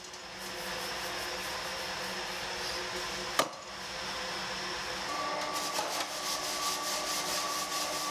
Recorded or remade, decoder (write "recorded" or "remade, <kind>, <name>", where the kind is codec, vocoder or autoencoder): recorded